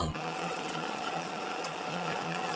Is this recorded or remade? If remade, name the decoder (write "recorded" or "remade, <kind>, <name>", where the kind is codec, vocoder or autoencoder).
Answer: remade, vocoder, Vocos